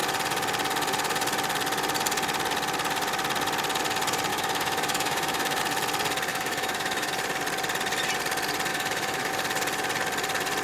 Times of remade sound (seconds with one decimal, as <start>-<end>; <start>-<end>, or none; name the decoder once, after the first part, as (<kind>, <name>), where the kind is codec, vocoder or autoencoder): 4.3-5.6 (autoencoder, DAC-VAE); 6.3-7.1; 8.7-9.3